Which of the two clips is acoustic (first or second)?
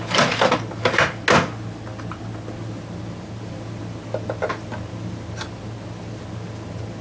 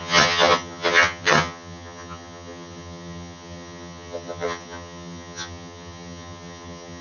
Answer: first